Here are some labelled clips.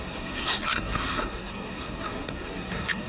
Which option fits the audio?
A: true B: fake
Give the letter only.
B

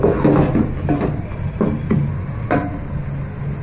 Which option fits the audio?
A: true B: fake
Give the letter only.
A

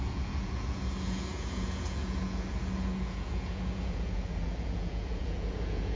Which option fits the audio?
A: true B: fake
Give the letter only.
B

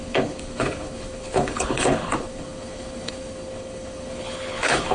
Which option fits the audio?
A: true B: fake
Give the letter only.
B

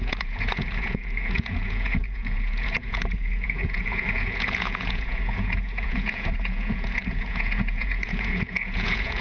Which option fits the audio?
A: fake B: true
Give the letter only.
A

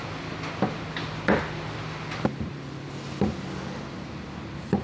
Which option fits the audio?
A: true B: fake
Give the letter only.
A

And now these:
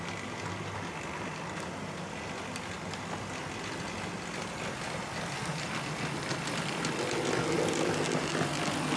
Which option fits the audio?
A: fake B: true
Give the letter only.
B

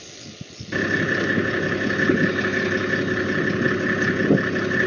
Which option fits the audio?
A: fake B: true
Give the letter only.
B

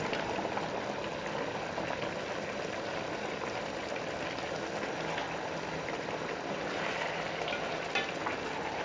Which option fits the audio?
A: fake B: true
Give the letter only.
B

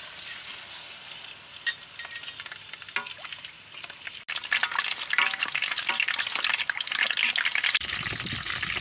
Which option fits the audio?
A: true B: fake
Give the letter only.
A